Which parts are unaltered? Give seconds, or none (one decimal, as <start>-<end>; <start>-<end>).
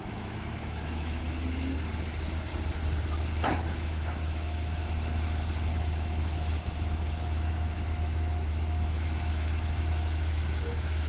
1.2-3.5